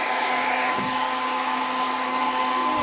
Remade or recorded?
remade